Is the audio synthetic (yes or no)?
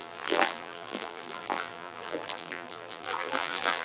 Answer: yes